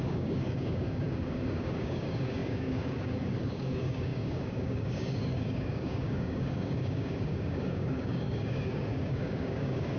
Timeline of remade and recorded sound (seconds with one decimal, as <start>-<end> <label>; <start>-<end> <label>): 0.0-10.0 remade